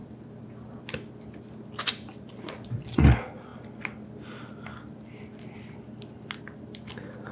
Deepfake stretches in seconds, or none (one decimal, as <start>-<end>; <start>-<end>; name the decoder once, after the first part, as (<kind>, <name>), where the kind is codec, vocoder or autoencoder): none